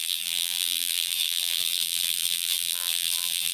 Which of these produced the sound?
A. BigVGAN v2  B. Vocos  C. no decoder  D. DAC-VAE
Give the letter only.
A